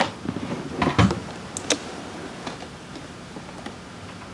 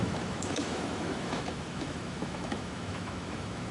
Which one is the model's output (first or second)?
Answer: second